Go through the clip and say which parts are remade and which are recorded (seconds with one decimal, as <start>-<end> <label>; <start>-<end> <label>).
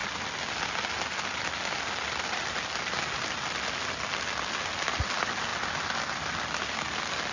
0.0-7.3 recorded